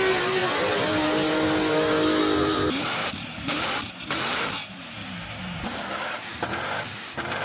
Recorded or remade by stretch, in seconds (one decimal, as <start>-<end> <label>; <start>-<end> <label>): 0.0-3.0 recorded; 3.0-6.3 remade; 6.3-7.4 recorded